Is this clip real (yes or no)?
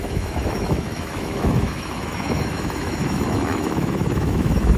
no